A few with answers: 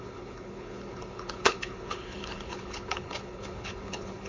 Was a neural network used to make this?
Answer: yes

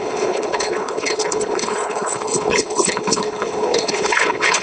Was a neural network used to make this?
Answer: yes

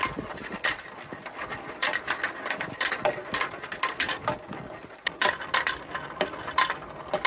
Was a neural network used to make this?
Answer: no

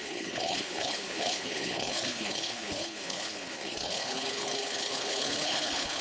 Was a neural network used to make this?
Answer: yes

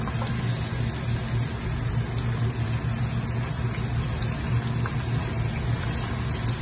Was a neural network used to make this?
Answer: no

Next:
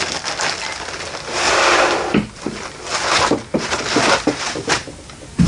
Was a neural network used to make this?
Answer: no